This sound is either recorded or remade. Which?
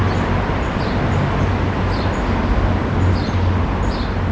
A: recorded